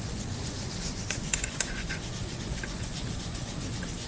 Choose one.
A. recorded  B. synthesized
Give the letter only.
B